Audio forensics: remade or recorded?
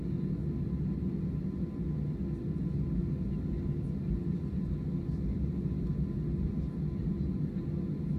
recorded